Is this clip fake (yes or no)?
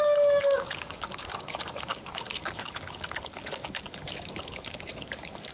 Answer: yes